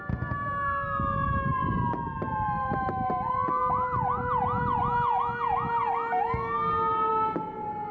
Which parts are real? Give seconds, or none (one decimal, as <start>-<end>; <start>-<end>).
0.0-1.5; 3.1-3.6; 4.8-7.9